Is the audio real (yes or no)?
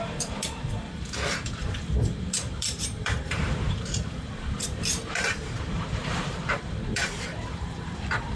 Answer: no